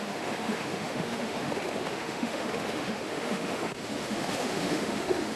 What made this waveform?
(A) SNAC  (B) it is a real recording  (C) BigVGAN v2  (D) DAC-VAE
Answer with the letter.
D